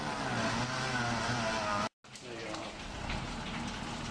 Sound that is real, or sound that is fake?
real